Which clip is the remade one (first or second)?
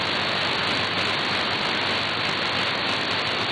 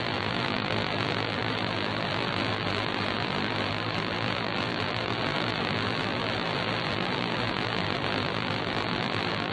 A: second